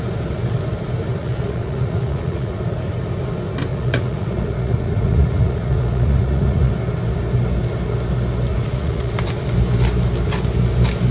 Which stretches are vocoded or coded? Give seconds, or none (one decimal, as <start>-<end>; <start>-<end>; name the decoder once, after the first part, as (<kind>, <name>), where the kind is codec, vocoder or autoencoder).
1.2-2.6 (vocoder, Vocos); 3.7-6.7; 8.5-9.1